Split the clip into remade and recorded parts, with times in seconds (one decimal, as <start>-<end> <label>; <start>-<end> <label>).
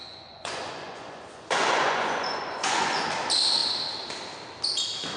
0.0-3.1 remade; 3.1-5.2 recorded